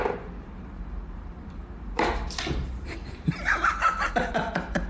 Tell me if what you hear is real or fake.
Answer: fake